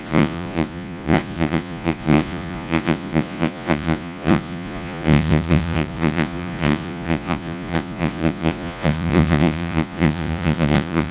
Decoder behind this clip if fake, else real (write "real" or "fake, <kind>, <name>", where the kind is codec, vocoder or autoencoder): fake, vocoder, Vocos